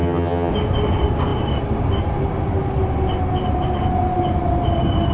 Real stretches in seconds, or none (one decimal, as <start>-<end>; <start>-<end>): 0.5-5.1